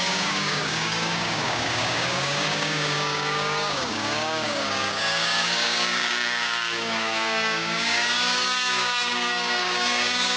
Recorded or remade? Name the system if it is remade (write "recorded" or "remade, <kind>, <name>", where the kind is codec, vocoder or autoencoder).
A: remade, codec, DAC